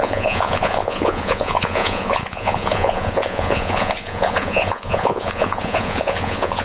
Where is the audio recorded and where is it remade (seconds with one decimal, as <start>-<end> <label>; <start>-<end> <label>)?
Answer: 0.0-6.6 remade